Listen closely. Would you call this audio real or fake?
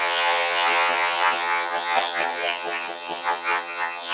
fake